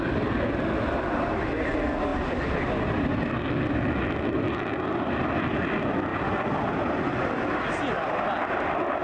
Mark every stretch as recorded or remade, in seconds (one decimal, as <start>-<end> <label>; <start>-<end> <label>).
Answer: 0.0-9.0 recorded